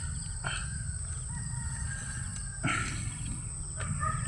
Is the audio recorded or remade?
recorded